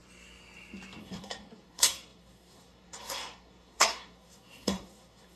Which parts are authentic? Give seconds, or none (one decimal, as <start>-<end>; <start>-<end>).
0.0-1.0